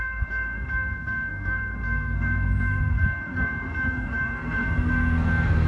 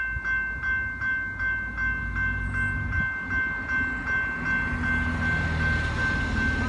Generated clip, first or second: first